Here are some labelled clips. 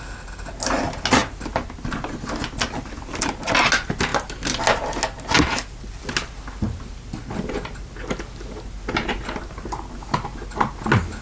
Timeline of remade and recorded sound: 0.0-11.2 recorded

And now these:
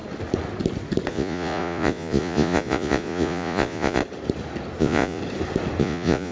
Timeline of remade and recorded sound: 0.0-1.1 recorded; 1.1-4.0 remade; 4.0-4.8 recorded; 4.8-5.2 remade; 5.2-5.8 recorded; 5.8-6.3 remade

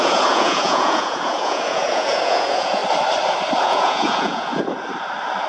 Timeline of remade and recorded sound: 0.0-2.8 remade; 2.8-3.6 recorded; 3.6-4.5 remade; 4.5-5.5 recorded

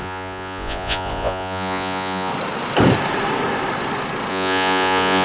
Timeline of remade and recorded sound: 0.0-2.3 remade; 2.3-4.3 recorded; 4.3-5.2 remade

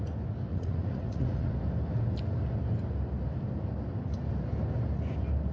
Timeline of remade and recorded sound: 0.0-0.5 recorded; 0.5-1.5 remade; 1.5-5.5 recorded

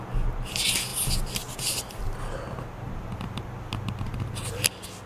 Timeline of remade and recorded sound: 0.0-5.1 recorded

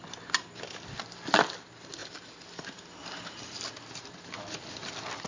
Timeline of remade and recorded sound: 0.0-5.3 recorded

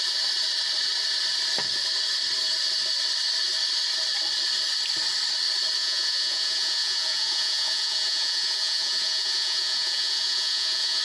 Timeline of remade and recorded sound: 0.0-5.8 recorded; 5.8-11.0 remade